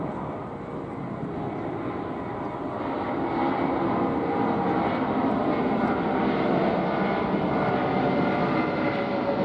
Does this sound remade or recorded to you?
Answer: recorded